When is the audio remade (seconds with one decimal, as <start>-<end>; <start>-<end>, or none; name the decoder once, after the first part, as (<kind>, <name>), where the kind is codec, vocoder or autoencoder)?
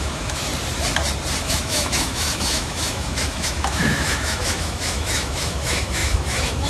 0.0-0.5 (autoencoder, DAC-VAE); 1.4-6.7